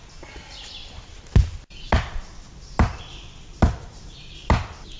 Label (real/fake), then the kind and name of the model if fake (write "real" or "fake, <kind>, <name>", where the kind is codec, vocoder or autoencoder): real